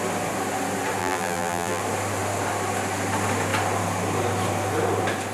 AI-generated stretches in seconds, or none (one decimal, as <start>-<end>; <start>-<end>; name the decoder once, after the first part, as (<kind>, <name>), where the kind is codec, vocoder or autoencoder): 1.0-1.8 (vocoder, BigVGAN v2)